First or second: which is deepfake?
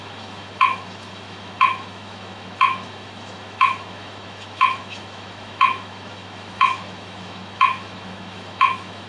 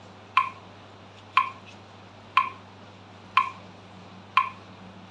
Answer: first